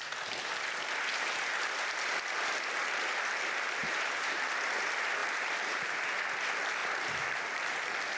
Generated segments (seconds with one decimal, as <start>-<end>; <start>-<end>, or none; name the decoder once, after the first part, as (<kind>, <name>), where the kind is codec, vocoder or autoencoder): 3.8-4.3 (vocoder, BigVGAN v2); 5.2-6.0